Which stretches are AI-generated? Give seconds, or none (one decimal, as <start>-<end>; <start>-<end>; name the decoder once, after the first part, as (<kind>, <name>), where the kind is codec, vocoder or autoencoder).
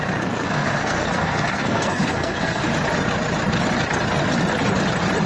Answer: 0.0-2.6 (codec, SNAC)